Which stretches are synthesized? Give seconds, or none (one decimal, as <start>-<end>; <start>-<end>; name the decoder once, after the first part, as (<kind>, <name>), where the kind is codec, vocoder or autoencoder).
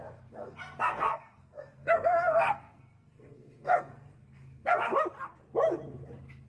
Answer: 0.0-4.9 (codec, SNAC)